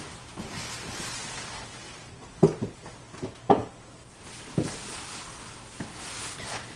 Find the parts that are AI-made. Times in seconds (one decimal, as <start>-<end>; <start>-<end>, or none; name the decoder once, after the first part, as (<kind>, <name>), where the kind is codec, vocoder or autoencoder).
none